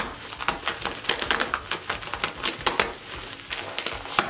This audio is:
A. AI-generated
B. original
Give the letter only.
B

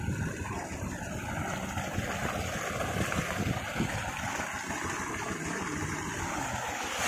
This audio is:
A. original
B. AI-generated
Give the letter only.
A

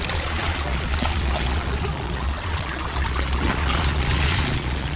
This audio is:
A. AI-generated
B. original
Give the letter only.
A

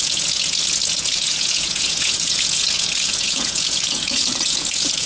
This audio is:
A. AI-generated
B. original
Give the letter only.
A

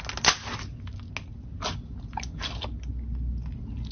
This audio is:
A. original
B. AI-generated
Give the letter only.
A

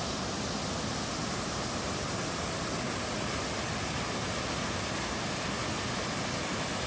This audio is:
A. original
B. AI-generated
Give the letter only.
A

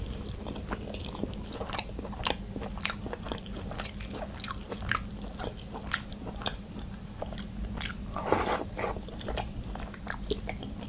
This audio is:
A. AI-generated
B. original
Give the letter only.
B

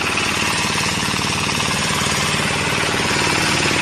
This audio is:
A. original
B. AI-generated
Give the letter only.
B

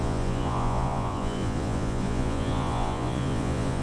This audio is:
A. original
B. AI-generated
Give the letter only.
B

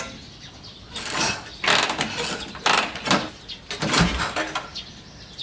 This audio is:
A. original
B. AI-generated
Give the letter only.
A